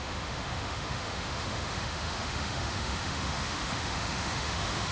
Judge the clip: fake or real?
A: fake